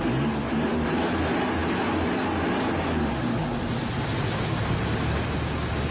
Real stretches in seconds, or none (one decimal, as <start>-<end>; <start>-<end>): 0.0-5.9